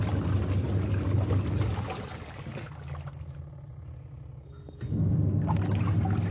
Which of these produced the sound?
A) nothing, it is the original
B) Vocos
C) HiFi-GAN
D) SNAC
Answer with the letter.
A